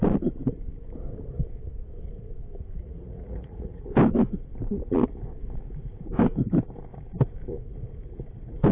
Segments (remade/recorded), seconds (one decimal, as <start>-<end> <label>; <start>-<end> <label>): 0.0-2.8 recorded; 2.8-3.8 remade; 3.8-8.7 recorded